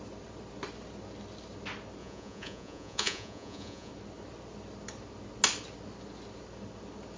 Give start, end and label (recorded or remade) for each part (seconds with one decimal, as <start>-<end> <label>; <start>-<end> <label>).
0.0-2.0 recorded; 2.0-3.9 remade; 3.9-7.2 recorded